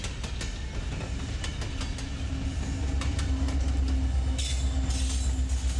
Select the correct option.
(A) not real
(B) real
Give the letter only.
B